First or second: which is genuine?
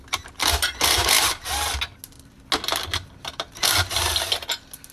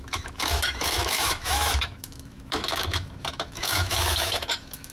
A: first